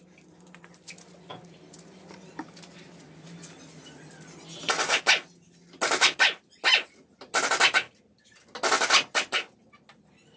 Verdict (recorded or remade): recorded